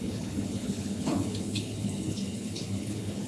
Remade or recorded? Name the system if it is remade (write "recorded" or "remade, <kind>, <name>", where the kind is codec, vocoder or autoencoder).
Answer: remade, codec, HILCodec